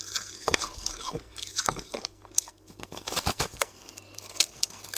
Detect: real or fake fake